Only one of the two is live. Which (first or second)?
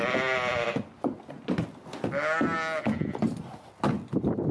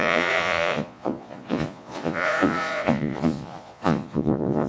first